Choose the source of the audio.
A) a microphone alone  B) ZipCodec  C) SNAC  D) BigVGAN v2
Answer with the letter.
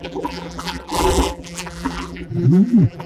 D